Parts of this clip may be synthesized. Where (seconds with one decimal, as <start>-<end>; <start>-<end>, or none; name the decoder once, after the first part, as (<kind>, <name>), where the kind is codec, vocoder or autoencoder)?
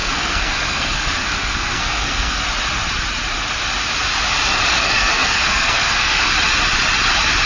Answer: 0.0-2.4 (codec, SNAC); 4.7-6.3